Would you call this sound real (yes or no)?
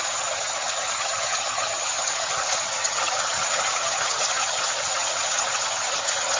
no